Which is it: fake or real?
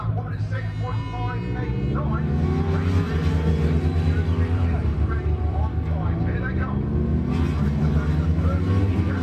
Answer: real